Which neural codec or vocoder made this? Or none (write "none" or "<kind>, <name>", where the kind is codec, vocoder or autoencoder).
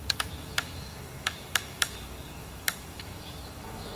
autoencoder, DAC-VAE